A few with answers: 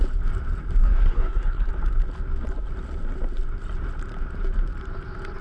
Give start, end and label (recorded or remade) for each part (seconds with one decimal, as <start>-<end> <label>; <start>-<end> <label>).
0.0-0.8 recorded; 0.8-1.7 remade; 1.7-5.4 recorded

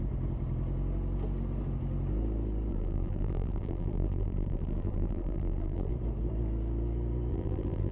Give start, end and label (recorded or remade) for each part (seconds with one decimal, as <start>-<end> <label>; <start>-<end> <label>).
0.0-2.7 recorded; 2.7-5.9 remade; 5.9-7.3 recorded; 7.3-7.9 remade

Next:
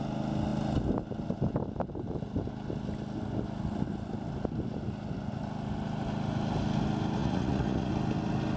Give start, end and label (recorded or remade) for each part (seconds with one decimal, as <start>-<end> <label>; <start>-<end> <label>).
0.0-7.2 recorded; 7.2-7.9 remade; 7.9-8.6 recorded

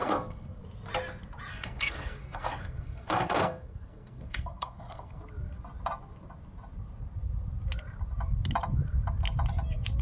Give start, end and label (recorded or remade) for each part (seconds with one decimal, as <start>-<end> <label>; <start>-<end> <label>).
0.0-0.6 remade; 0.6-1.5 recorded; 1.5-5.2 remade; 5.2-10.0 recorded